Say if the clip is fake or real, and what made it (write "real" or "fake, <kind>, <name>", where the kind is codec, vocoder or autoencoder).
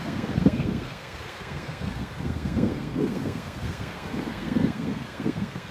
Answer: fake, codec, SNAC